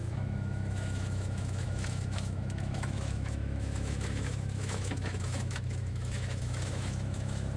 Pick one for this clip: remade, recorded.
remade